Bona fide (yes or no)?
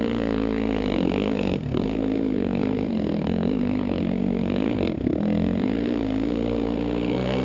no